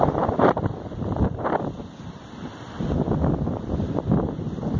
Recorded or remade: recorded